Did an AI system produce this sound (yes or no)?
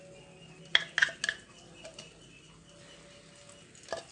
no